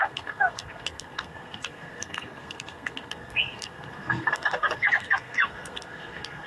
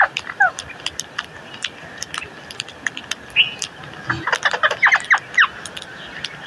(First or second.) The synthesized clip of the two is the first